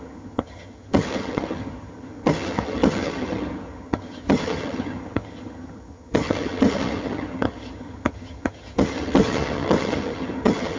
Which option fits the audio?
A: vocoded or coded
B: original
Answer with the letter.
A